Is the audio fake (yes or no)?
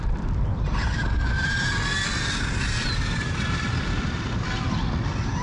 no